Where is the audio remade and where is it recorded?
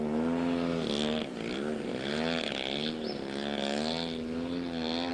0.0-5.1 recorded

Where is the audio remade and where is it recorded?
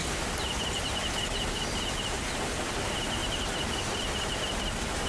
0.0-3.2 recorded; 3.2-5.1 remade